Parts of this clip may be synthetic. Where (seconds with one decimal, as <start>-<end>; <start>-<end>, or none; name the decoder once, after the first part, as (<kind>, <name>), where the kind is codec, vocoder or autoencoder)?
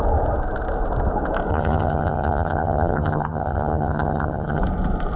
1.5-4.6 (vocoder, HiFi-GAN)